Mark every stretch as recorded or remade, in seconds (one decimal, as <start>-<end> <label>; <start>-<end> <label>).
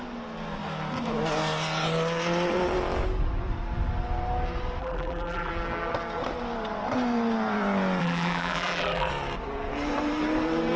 0.0-4.8 recorded; 4.8-5.5 remade; 5.5-8.0 recorded; 8.0-9.1 remade; 9.1-10.8 recorded